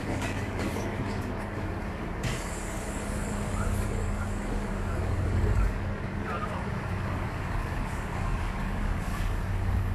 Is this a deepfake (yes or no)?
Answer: yes